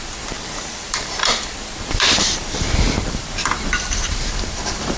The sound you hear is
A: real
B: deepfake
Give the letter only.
B